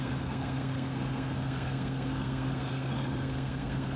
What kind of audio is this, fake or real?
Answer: fake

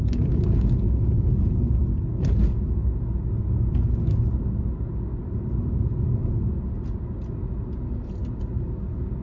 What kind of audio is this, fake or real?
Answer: real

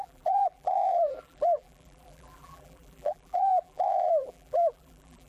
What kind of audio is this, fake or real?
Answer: fake